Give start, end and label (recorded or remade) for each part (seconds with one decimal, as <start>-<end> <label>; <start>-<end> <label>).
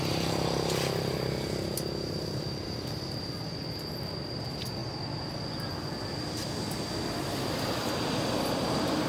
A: 0.0-9.1 recorded